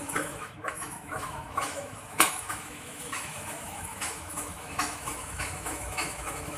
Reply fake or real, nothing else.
fake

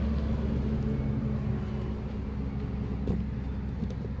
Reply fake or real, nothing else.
real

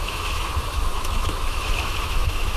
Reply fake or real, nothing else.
fake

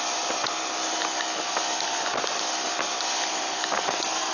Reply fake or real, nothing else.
real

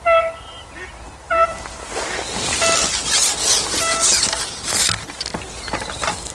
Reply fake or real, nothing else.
real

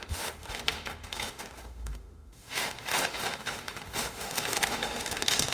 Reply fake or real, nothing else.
fake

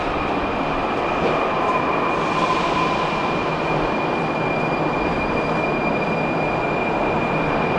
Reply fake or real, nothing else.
real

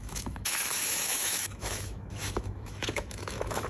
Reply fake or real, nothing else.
fake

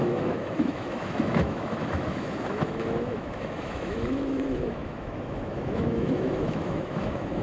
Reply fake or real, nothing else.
fake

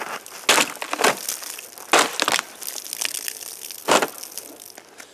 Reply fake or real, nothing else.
real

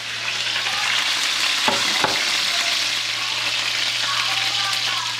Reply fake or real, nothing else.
real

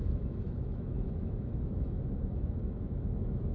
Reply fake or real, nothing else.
fake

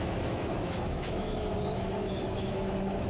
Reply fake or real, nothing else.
fake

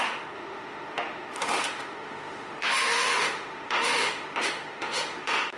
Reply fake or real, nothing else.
fake